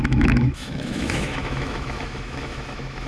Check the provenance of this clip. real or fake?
fake